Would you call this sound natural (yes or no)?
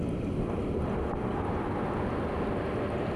yes